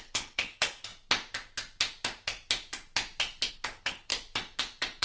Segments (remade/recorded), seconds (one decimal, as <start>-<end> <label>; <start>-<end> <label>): 0.0-0.9 remade; 0.9-3.5 recorded; 3.5-4.1 remade; 4.1-5.0 recorded